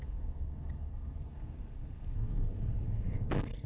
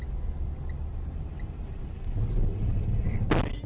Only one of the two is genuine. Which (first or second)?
second